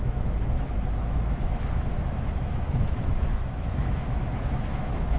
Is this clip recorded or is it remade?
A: remade